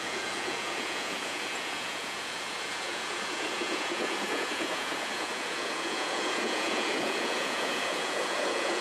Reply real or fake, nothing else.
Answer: fake